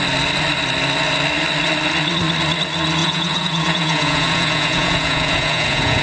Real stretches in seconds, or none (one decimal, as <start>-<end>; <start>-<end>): 0.0-3.0